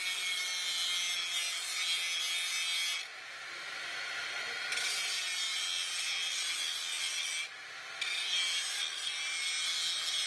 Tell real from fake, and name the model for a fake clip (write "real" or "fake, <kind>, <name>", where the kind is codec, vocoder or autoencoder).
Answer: real